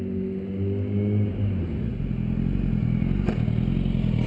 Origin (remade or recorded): recorded